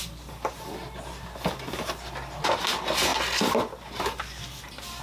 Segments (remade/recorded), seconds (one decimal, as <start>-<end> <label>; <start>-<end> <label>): 0.0-3.1 remade; 3.1-3.6 recorded; 3.6-5.0 remade